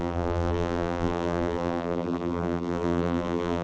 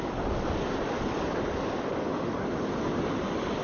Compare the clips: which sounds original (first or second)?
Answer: second